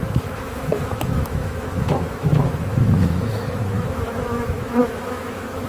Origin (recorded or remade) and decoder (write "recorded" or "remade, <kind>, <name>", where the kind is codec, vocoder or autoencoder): remade, autoencoder, DAC-VAE